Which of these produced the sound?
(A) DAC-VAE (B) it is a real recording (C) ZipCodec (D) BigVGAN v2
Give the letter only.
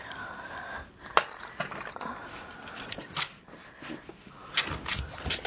B